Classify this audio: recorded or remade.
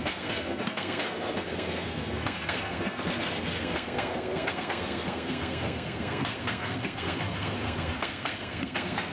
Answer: remade